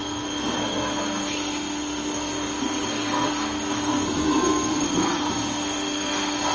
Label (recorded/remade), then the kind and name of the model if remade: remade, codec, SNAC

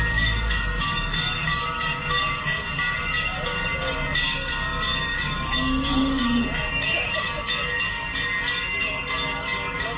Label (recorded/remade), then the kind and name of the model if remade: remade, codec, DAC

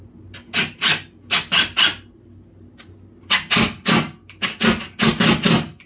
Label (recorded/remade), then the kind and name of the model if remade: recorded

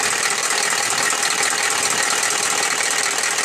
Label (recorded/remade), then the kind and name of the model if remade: recorded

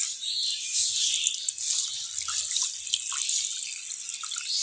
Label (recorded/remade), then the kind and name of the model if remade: recorded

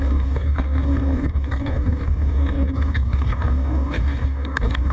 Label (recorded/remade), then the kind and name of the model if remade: remade, codec, DAC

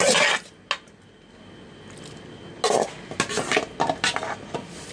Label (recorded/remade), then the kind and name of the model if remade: recorded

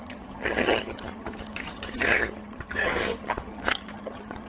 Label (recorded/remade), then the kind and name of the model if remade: remade, vocoder, HiFi-GAN